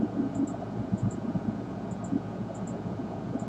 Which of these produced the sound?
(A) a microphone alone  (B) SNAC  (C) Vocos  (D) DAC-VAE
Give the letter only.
C